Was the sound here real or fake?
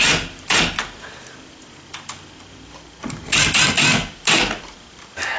real